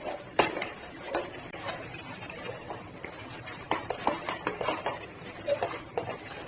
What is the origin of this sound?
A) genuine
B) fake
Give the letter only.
B